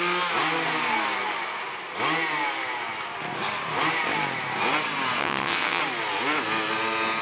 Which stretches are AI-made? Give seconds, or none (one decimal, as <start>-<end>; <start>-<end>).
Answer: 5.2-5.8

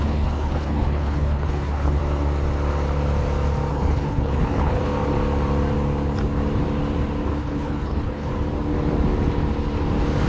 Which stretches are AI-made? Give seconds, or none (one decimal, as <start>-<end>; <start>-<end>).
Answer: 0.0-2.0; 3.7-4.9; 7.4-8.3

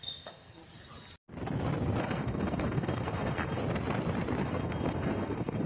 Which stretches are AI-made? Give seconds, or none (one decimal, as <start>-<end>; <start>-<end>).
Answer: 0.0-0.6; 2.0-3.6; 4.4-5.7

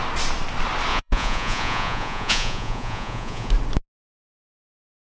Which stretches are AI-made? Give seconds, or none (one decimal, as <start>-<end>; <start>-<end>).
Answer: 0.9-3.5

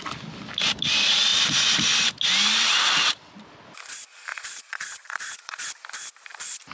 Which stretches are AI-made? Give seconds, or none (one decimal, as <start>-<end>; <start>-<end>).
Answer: 4.3-5.7

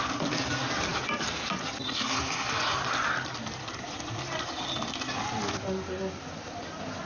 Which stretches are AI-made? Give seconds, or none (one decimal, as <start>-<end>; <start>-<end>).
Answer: 0.9-1.5